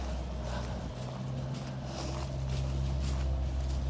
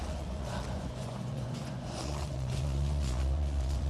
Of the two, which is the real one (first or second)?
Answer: first